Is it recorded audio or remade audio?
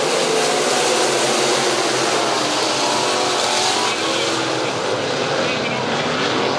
recorded